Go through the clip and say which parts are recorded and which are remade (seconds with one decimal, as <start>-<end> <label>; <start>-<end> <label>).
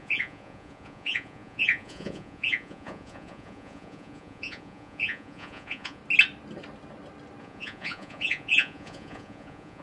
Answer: 0.0-6.0 remade; 6.0-7.4 recorded; 7.4-9.8 remade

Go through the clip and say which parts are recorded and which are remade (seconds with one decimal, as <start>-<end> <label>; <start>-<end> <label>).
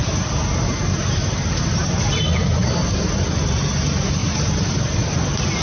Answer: 0.0-1.9 remade; 1.9-2.6 recorded; 2.6-3.3 remade; 3.3-4.2 recorded; 4.2-5.1 remade; 5.1-5.6 recorded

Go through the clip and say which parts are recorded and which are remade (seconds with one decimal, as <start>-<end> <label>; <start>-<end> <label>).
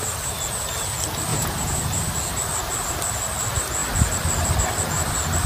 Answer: 0.0-1.3 recorded; 1.3-1.9 remade; 1.9-5.5 recorded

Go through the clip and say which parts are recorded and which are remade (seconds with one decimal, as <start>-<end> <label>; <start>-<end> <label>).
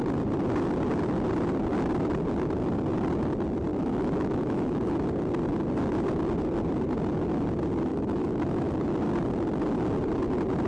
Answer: 0.0-3.7 recorded; 3.7-4.9 remade; 4.9-7.9 recorded; 7.9-8.7 remade; 8.7-10.7 recorded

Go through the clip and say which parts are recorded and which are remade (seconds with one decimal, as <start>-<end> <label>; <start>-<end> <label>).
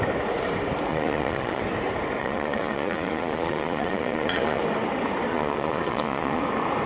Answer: 0.0-0.9 recorded; 0.9-1.6 remade; 1.6-2.2 recorded; 2.2-4.6 remade; 4.6-5.3 recorded; 5.3-6.4 remade; 6.4-6.9 recorded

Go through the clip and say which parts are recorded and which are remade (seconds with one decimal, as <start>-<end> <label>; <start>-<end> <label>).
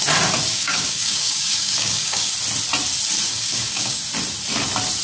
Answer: 0.0-0.5 recorded; 0.5-2.3 remade; 2.3-3.3 recorded; 3.3-4.0 remade; 4.0-5.0 recorded